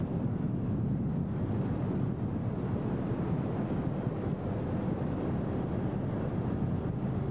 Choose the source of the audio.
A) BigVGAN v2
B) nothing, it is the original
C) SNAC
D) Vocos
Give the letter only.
B